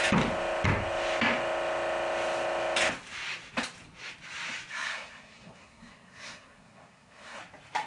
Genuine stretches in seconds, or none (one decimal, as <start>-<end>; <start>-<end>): 0.0-4.7; 7.4-7.9